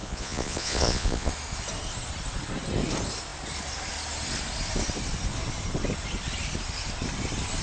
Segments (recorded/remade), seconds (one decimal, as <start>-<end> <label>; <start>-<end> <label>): 0.0-1.3 remade; 1.3-7.6 recorded